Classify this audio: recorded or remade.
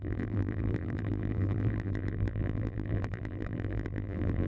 remade